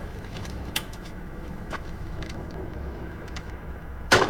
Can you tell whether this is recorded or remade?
remade